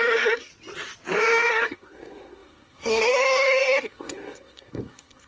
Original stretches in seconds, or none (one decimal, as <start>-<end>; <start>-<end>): 0.5-1.5